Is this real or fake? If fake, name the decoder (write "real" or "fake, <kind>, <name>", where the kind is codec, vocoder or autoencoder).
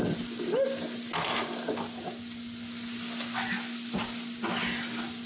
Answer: real